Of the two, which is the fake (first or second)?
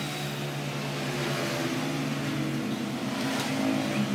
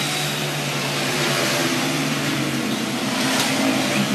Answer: second